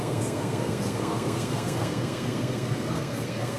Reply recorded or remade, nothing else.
remade